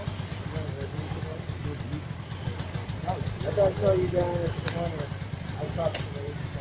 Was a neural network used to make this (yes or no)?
no